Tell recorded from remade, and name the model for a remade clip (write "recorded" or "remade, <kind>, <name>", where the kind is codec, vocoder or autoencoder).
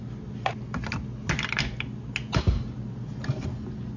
recorded